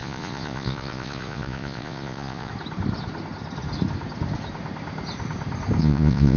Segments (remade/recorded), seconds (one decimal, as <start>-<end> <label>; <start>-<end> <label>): 0.0-2.5 remade; 2.5-5.8 recorded; 5.8-6.4 remade